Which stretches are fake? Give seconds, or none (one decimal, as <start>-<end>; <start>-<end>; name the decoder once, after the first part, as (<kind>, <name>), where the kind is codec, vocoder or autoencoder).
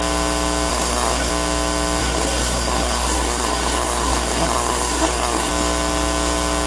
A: 0.7-1.3 (codec, SNAC); 2.0-5.5